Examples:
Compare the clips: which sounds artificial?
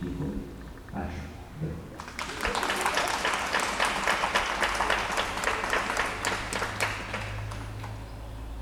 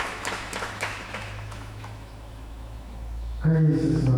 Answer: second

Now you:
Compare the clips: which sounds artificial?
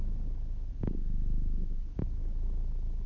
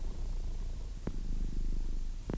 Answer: second